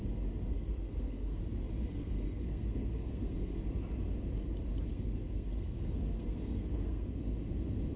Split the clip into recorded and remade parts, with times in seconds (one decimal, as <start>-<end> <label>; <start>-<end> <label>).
0.0-0.5 recorded; 0.5-1.4 remade; 1.4-1.9 recorded; 1.9-3.6 remade; 3.6-4.9 recorded; 4.9-7.2 remade; 7.2-8.0 recorded